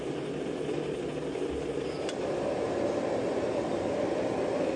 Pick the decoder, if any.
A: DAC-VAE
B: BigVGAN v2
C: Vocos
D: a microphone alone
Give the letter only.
D